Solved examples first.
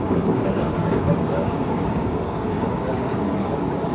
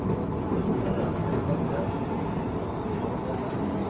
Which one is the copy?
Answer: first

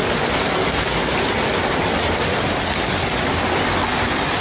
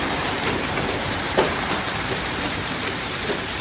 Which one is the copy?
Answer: second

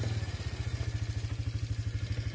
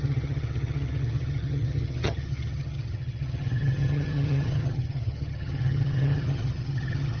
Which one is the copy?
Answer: second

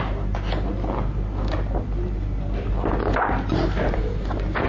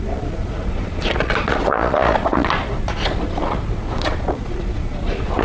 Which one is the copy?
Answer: second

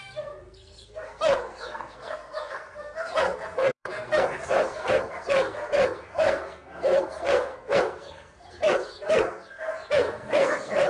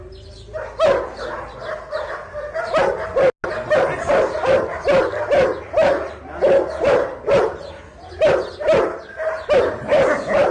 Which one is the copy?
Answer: first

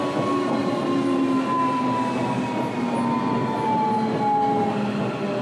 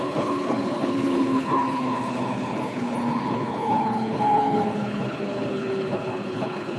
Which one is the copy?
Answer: second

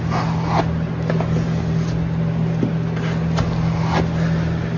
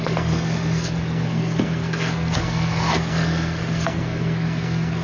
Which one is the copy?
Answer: second